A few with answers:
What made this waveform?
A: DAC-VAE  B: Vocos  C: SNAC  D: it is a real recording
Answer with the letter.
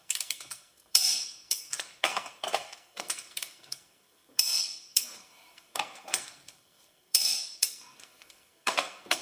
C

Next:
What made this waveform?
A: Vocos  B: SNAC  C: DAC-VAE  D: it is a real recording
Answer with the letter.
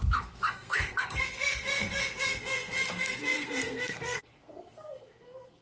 B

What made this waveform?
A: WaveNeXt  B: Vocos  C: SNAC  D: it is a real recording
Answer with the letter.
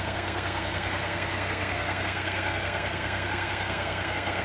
C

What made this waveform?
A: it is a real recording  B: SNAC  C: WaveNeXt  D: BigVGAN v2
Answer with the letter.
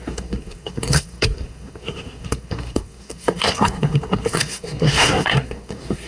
B